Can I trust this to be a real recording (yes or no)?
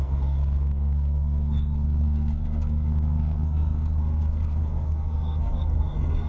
no